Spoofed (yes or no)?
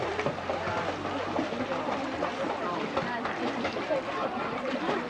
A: no